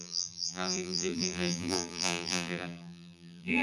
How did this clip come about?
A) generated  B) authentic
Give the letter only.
A